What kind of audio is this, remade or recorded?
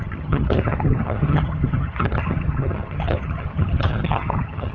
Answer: remade